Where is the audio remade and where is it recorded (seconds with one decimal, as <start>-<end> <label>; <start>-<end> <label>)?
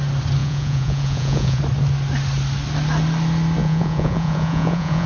0.0-0.4 recorded; 0.4-1.6 remade; 1.6-3.6 recorded; 3.6-5.1 remade